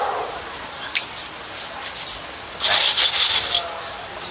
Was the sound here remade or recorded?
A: remade